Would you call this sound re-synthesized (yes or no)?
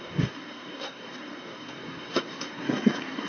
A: yes